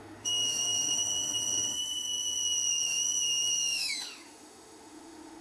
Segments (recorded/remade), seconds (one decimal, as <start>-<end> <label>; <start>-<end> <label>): 0.0-5.4 remade